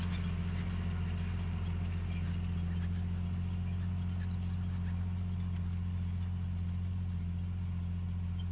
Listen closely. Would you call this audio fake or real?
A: real